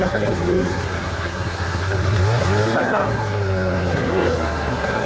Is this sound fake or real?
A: fake